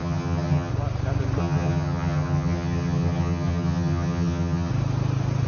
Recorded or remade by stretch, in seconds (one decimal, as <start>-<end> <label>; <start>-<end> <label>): 0.0-0.7 remade; 0.7-1.4 recorded; 1.4-4.7 remade; 4.7-5.5 recorded